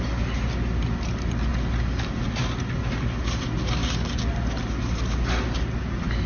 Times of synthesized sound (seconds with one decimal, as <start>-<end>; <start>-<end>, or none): none